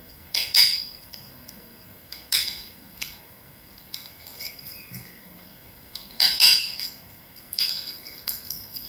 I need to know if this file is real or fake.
fake